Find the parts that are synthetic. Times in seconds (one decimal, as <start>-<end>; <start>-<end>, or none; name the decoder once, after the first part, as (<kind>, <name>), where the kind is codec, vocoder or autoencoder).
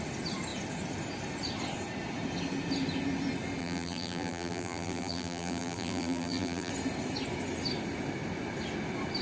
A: 3.6-6.7 (vocoder, BigVGAN v2)